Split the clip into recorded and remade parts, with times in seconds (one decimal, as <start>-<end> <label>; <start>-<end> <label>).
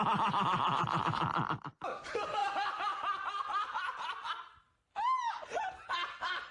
0.0-6.5 recorded